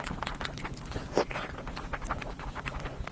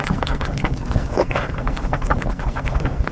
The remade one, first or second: second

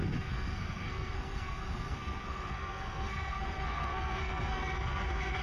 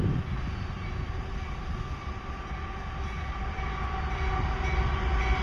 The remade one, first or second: first